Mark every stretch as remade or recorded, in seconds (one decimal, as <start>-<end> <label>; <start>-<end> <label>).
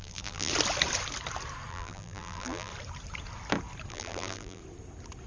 0.0-0.5 remade; 0.5-1.7 recorded; 1.7-2.7 remade; 2.7-3.9 recorded; 3.9-4.6 remade; 4.6-5.3 recorded